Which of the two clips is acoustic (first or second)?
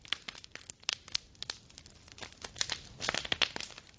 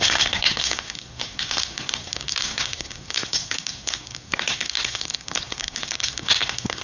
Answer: first